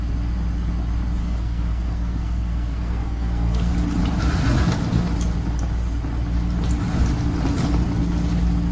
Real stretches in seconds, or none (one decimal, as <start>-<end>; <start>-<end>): 0.0-1.2; 3.7-8.7